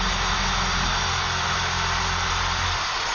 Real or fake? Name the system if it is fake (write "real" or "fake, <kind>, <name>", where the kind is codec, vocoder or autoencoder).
real